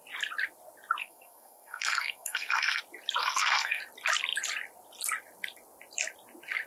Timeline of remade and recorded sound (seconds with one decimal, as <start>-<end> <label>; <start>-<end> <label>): 0.0-1.0 recorded; 1.0-2.8 remade; 2.8-3.2 recorded; 3.2-3.8 remade; 3.8-6.7 recorded